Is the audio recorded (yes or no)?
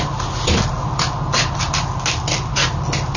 yes